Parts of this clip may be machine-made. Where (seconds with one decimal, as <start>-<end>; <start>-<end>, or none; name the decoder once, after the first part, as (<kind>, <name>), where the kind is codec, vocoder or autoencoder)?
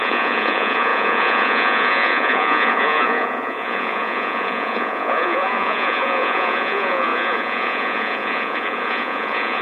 0.0-9.6 (vocoder, Vocos)